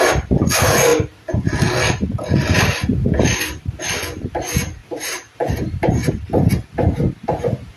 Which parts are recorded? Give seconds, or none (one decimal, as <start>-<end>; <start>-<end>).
0.0-4.8; 6.3-7.8